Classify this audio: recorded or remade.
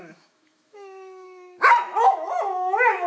remade